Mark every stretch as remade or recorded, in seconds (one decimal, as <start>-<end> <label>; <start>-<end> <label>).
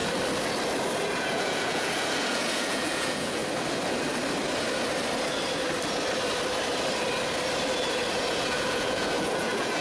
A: 0.0-1.0 recorded; 1.0-3.4 remade; 3.4-8.1 recorded; 8.1-9.8 remade